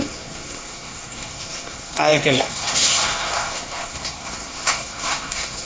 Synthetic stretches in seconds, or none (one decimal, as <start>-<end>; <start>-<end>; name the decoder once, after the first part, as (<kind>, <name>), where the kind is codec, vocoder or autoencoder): 0.0-5.7 (codec, SNAC)